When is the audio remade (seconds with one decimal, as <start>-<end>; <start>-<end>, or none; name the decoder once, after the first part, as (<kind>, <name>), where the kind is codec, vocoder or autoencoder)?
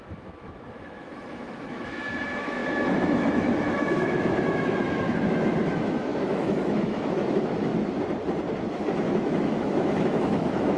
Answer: 0.0-7.7 (autoencoder, DAC-VAE); 8.7-10.8